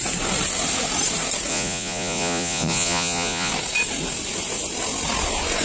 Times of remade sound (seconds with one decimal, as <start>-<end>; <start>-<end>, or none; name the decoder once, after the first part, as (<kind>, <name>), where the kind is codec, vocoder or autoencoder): 1.5-3.5 (vocoder, Vocos)